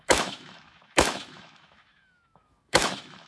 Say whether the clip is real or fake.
fake